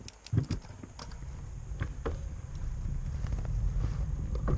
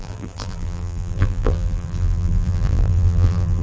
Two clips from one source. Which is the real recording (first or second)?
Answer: first